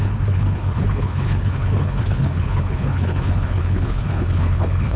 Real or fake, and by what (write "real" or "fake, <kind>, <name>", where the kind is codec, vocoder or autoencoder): fake, codec, HILCodec